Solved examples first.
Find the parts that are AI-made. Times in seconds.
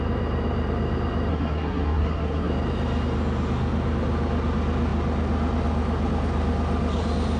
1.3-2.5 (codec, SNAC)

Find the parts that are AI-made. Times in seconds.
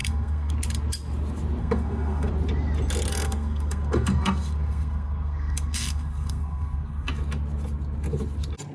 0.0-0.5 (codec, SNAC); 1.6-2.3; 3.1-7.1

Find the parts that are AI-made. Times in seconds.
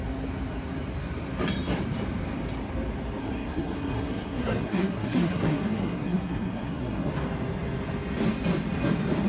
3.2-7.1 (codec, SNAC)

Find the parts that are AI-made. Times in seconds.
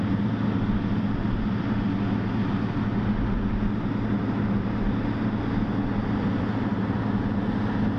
none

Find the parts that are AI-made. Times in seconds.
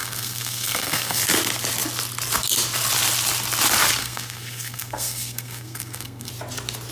0.0-1.2 (codec, SNAC); 4.0-6.3